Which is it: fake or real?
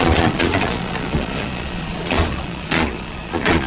fake